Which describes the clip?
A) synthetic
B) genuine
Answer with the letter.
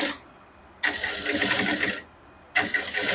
B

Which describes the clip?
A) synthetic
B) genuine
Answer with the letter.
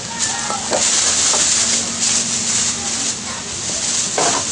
B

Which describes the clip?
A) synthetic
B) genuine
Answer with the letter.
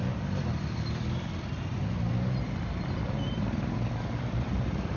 B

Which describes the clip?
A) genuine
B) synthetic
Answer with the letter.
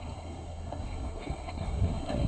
B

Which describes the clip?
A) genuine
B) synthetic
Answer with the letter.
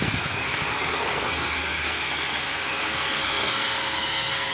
B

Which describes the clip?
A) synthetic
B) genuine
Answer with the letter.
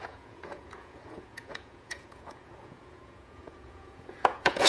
A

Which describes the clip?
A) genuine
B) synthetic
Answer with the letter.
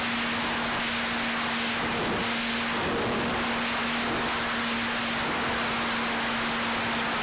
A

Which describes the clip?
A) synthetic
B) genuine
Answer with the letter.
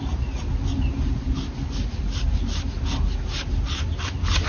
B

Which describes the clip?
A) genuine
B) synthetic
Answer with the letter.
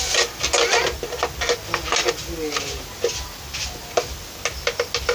A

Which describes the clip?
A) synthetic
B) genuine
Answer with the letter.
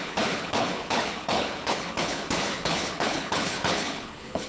A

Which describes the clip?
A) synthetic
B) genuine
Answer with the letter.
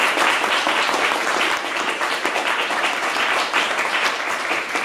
A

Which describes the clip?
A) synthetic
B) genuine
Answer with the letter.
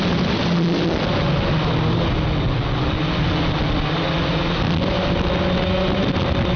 B